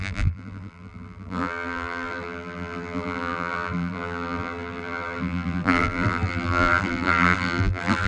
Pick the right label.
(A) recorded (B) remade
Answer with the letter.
B